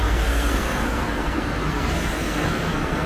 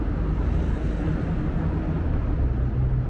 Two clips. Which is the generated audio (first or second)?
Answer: first